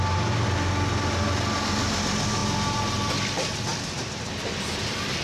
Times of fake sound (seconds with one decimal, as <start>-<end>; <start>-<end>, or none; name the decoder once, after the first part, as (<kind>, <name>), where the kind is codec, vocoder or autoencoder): none